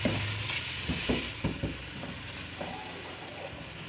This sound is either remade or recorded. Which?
recorded